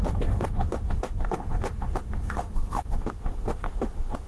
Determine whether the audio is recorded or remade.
remade